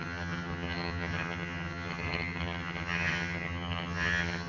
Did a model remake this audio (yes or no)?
yes